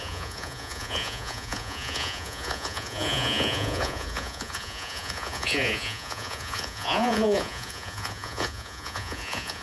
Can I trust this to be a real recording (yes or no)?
no